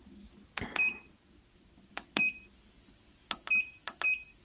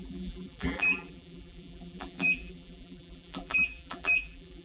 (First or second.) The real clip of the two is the first